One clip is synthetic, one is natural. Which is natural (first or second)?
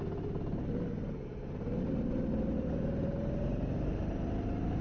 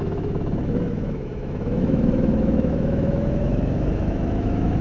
first